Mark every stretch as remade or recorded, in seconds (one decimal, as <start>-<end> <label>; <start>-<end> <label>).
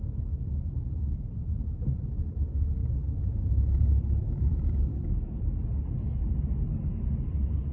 0.0-7.7 recorded